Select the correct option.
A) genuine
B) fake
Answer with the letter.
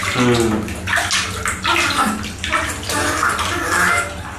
A